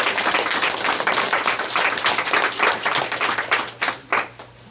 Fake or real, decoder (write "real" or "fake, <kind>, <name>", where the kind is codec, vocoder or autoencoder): real